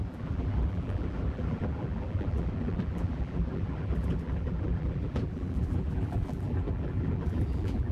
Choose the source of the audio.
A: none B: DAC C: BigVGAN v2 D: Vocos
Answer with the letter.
C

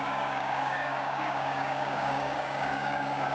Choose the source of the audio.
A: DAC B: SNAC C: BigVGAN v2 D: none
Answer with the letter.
A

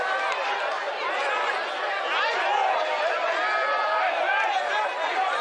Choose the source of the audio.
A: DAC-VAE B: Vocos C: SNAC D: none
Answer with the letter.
D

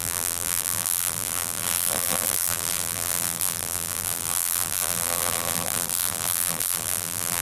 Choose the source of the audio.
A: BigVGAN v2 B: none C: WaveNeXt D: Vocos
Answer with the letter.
A